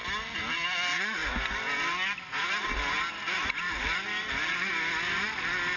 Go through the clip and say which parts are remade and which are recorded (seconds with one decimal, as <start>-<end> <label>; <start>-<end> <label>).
0.0-5.8 recorded